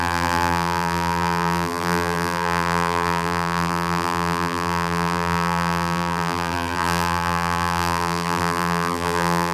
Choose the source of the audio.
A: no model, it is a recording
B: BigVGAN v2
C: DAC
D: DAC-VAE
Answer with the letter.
B